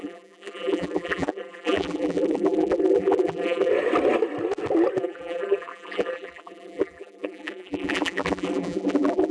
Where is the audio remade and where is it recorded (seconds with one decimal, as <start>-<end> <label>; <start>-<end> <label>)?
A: 0.0-3.7 remade; 3.7-5.0 recorded; 5.0-9.3 remade